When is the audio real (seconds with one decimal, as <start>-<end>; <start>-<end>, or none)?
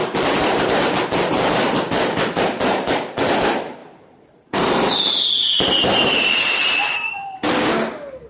0.0-3.8; 7.5-8.3